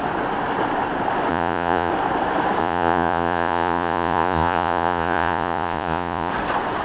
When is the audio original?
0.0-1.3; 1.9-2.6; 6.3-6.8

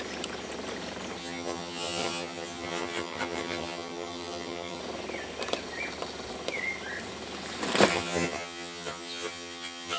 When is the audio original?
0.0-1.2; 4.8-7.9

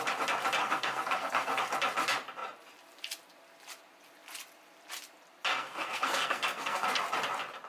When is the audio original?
0.0-0.6; 1.6-5.5; 7.0-7.7